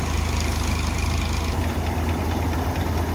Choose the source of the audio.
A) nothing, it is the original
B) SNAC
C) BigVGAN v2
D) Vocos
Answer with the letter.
A